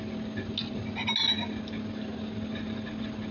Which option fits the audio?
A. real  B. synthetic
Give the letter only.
A